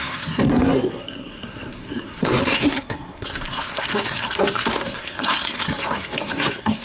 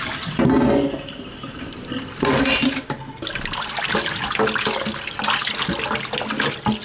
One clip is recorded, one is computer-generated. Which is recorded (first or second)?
second